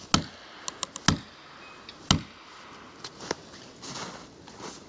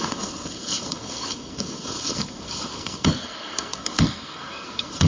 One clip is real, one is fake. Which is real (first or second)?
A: first